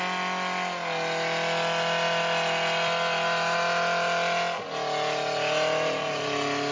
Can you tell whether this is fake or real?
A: real